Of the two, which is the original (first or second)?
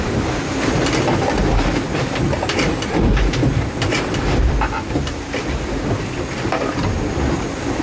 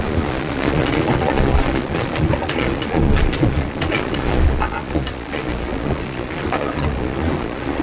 first